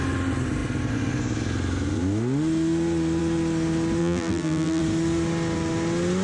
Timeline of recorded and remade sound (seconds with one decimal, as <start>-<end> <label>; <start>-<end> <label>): 0.0-4.0 recorded; 4.0-4.8 remade; 4.8-6.2 recorded